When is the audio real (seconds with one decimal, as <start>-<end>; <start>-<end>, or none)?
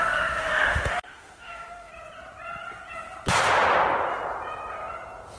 1.9-5.4